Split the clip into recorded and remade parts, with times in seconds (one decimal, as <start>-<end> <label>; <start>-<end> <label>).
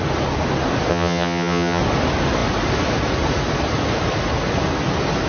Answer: 0.0-0.9 recorded; 0.9-1.8 remade; 1.8-5.3 recorded